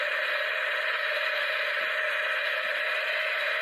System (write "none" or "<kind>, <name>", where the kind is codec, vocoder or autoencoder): none